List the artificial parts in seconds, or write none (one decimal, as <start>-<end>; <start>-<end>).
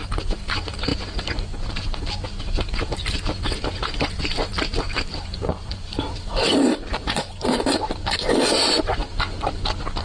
0.0-9.0